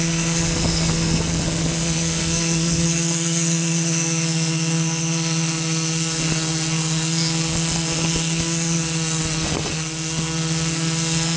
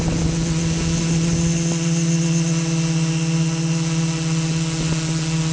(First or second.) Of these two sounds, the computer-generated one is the first